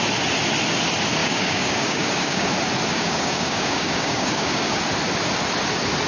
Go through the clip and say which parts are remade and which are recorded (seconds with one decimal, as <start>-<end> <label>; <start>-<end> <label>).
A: 0.0-1.2 recorded; 1.2-2.5 remade; 2.5-2.9 recorded; 2.9-4.8 remade; 4.8-6.1 recorded